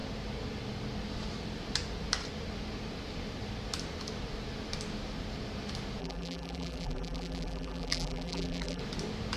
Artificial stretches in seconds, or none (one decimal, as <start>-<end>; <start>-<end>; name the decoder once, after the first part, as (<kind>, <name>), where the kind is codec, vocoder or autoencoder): 6.0-8.8 (vocoder, BigVGAN v2)